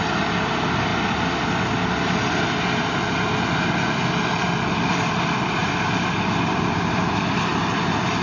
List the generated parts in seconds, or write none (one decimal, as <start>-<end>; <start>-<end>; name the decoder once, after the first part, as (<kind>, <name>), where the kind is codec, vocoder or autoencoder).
0.0-0.9 (vocoder, BigVGAN v2); 4.7-8.2